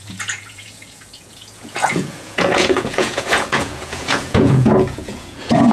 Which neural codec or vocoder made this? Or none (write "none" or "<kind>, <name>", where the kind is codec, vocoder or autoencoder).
vocoder, Vocos